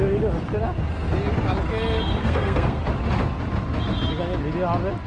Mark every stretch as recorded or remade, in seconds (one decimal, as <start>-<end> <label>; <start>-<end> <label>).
0.0-2.2 recorded; 2.2-2.8 remade; 2.8-5.1 recorded